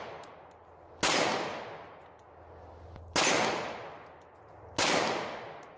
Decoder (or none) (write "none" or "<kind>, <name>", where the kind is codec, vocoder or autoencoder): none